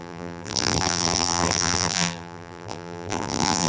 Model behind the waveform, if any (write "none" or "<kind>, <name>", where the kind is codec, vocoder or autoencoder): vocoder, BigVGAN v2